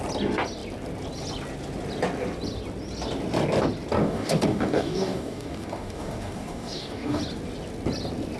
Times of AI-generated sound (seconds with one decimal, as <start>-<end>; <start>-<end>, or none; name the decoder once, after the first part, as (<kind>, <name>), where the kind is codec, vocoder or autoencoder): 4.0-7.2 (codec, DAC)